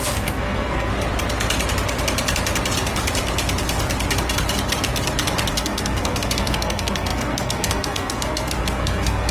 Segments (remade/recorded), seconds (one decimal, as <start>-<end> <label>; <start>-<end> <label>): 0.0-0.9 remade; 0.9-5.5 recorded; 5.5-9.3 remade